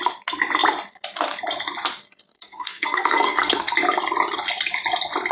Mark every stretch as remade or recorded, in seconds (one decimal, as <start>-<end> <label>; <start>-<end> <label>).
0.0-2.3 recorded; 2.3-3.7 remade; 3.7-5.3 recorded